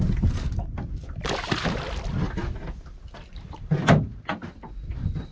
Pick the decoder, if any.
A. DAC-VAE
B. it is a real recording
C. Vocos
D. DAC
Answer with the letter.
B